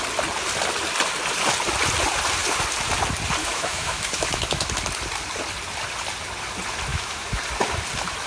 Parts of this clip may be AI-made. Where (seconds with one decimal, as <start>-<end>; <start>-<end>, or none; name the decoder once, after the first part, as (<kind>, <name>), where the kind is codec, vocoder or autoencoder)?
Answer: 3.4-4.7 (autoencoder, DAC-VAE); 6.9-7.4